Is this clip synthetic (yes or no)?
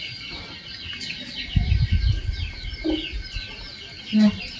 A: no